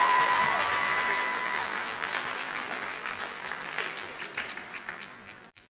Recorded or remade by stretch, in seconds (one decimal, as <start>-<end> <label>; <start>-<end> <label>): 0.0-4.1 remade; 4.1-4.8 recorded; 4.8-5.7 remade